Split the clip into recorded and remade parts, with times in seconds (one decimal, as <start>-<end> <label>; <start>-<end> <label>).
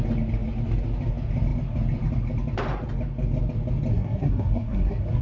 0.0-3.9 recorded; 3.9-5.2 remade